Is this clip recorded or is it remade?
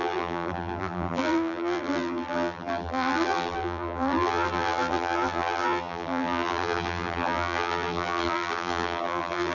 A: remade